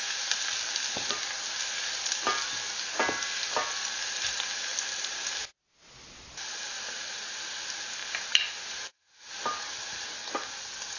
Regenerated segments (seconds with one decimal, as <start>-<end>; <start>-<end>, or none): none